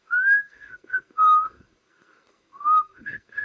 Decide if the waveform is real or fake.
fake